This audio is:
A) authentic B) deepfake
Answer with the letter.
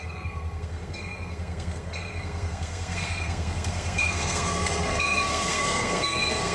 B